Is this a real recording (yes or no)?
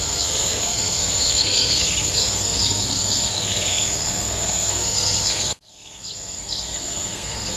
no